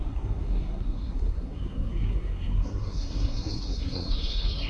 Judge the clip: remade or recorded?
remade